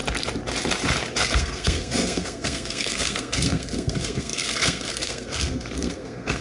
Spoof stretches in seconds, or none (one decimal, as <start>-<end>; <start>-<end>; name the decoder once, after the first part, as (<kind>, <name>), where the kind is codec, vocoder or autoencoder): 1.2-6.4 (codec, SNAC)